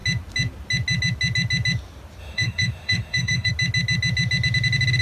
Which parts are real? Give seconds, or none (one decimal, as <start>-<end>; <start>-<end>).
0.0-2.2; 3.5-5.0